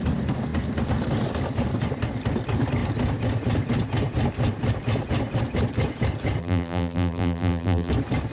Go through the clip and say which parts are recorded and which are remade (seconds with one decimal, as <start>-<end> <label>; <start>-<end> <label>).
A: 0.0-6.4 recorded; 6.4-7.9 remade; 7.9-8.3 recorded